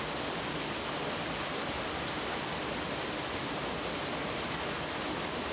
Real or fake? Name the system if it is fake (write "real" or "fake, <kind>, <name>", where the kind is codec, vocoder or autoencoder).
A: real